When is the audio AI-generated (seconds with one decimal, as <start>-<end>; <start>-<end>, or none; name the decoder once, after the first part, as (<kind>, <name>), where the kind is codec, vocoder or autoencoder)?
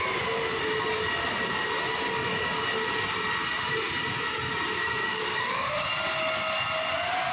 4.8-5.9 (codec, DAC)